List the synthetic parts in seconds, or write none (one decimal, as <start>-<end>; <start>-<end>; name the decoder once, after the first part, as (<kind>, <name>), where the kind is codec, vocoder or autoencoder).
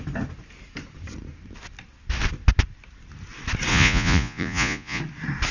3.7-5.0 (vocoder, Vocos)